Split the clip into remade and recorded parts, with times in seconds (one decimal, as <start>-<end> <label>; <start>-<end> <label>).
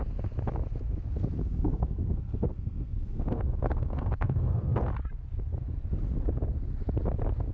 0.0-1.4 recorded; 1.4-4.8 remade; 4.8-7.5 recorded